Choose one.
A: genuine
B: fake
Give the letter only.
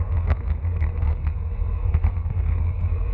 B